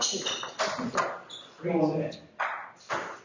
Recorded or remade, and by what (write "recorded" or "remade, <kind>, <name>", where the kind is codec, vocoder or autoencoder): recorded